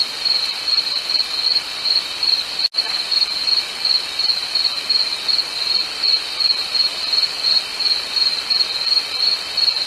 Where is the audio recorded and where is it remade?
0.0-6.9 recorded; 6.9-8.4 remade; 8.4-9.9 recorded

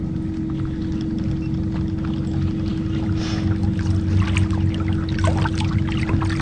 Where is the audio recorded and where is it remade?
0.0-6.4 recorded

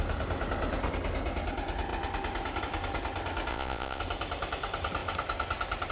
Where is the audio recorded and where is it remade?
0.0-3.5 recorded; 3.5-4.0 remade; 4.0-5.9 recorded